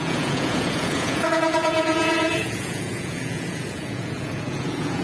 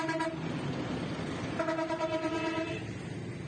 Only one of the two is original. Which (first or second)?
second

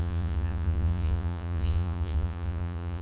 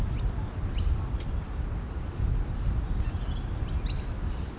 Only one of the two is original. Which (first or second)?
second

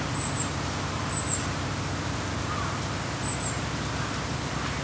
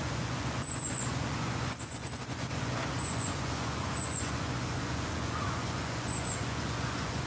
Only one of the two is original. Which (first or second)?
first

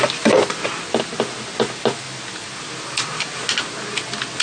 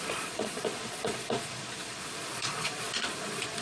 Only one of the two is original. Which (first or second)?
first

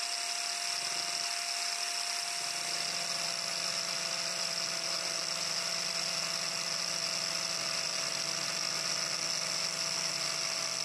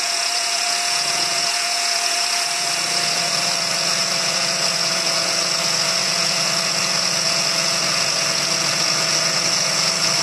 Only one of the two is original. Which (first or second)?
first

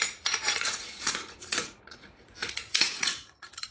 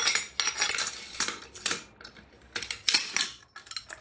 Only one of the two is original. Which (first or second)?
second